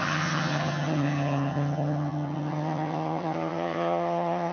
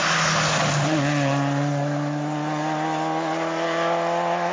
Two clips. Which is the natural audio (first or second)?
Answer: second